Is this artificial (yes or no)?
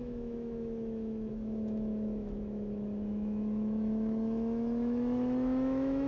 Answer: yes